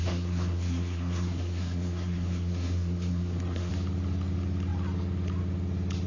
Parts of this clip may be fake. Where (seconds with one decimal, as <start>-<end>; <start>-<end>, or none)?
0.0-3.7